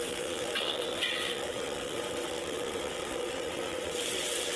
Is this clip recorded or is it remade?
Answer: remade